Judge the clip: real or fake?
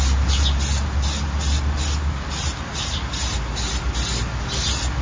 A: real